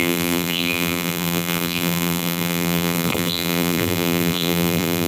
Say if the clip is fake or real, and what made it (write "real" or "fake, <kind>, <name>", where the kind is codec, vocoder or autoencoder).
fake, vocoder, BigVGAN v2